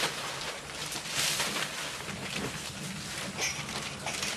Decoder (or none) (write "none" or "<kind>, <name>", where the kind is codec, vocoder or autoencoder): none